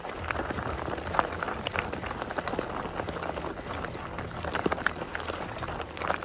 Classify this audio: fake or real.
real